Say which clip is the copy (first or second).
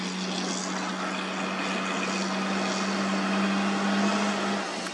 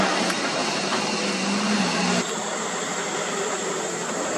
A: second